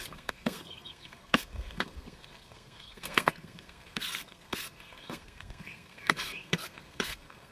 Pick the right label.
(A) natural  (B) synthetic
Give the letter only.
B